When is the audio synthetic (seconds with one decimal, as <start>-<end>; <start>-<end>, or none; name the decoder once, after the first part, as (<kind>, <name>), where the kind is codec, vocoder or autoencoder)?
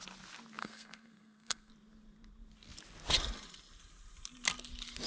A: 0.6-1.7 (codec, SNAC)